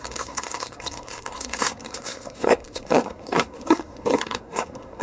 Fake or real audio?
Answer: fake